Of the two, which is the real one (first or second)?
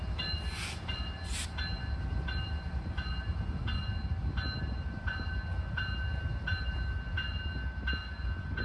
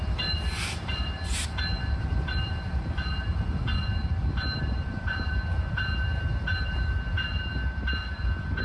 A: first